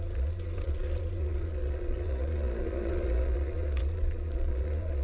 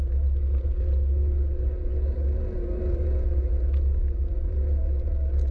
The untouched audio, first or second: second